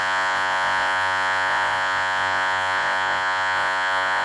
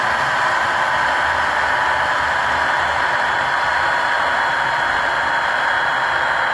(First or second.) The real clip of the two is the second